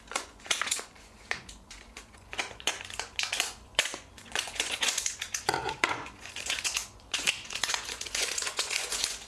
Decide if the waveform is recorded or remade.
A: remade